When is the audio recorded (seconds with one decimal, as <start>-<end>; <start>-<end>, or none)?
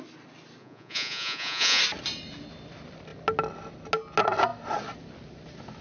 0.0-0.6; 1.8-5.8